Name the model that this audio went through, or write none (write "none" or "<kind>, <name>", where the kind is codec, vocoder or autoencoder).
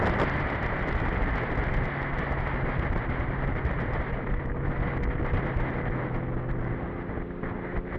none